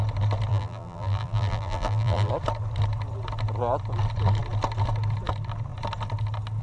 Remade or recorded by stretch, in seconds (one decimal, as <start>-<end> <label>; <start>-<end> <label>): 0.0-0.5 recorded; 0.5-2.3 remade; 2.3-6.6 recorded